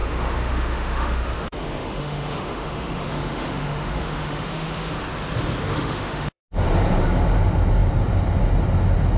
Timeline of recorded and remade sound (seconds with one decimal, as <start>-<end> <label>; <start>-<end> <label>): 0.0-4.9 remade; 4.9-5.6 recorded; 5.6-6.4 remade; 6.4-9.2 recorded